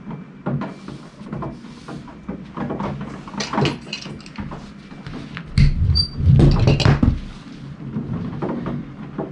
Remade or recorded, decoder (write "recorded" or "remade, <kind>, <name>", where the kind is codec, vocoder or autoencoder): recorded